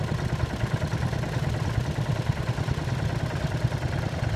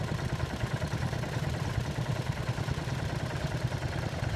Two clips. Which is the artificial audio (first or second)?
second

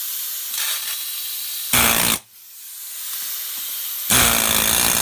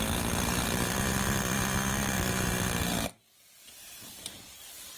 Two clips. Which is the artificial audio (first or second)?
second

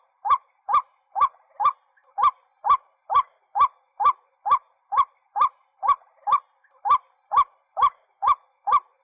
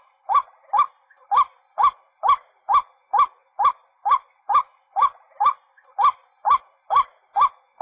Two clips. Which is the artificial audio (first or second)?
first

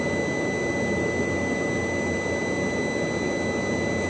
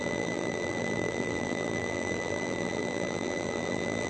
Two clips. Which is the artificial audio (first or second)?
second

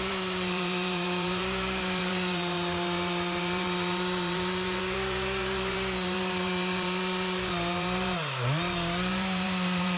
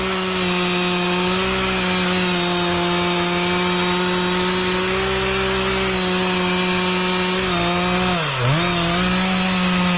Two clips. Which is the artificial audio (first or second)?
first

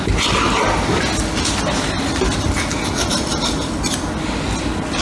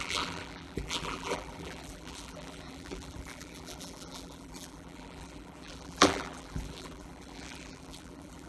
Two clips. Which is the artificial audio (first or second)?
second